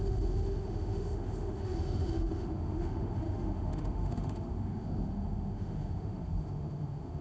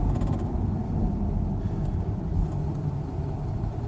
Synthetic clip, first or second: first